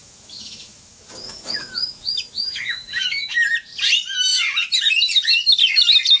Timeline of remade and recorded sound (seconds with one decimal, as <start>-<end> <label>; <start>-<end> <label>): 0.0-3.4 remade; 3.4-6.2 recorded